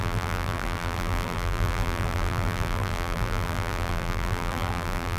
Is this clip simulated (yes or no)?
yes